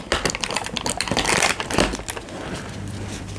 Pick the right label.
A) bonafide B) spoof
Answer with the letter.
B